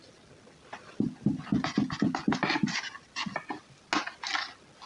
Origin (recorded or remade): recorded